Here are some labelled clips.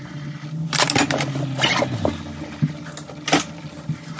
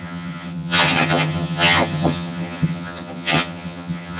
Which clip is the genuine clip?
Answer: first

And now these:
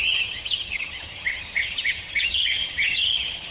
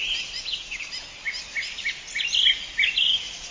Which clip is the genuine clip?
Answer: second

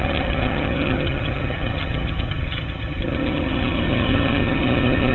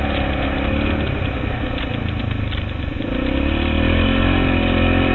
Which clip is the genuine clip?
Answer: second